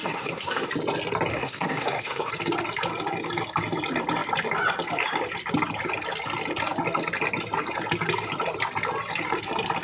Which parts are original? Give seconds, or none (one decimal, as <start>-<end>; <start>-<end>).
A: 0.7-1.3; 2.3-9.8